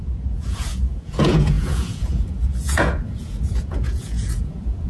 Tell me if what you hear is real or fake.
fake